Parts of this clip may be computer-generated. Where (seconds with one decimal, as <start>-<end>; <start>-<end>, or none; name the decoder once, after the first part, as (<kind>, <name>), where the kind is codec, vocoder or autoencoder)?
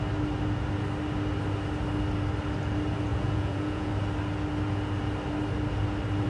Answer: 3.1-3.9 (vocoder, Vocos)